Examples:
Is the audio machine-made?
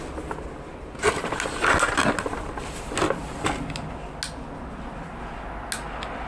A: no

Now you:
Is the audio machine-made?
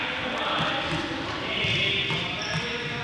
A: no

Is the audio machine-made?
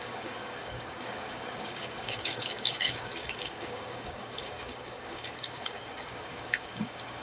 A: yes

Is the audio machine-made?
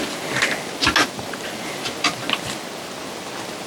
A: no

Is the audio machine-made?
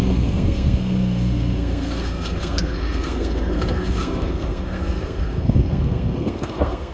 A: yes